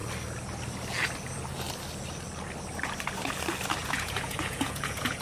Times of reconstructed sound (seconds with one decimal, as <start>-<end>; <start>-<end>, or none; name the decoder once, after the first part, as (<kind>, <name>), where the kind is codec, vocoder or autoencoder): 3.8-5.2 (vocoder, Vocos)